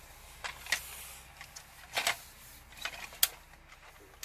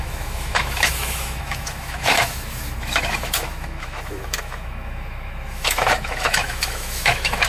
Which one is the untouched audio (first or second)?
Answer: first